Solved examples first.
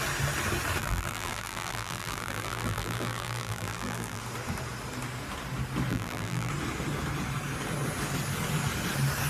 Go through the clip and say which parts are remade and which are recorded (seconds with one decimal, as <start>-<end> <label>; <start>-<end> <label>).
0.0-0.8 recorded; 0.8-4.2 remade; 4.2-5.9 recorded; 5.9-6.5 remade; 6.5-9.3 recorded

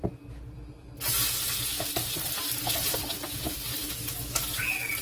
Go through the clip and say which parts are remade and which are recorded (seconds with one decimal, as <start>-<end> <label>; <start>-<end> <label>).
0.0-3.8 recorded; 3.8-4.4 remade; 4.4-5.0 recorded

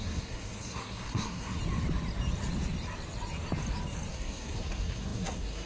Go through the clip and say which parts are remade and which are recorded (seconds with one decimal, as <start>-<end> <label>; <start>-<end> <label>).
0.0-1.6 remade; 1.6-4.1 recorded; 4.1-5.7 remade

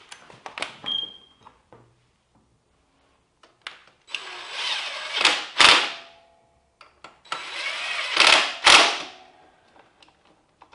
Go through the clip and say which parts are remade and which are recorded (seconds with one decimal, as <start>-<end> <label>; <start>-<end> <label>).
0.0-0.8 recorded; 0.8-1.9 remade; 1.9-10.7 recorded